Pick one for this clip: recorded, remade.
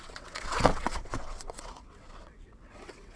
remade